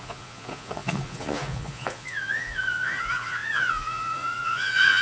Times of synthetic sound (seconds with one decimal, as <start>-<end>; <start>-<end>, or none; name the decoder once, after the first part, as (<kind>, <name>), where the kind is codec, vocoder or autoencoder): 0.0-5.0 (vocoder, Vocos)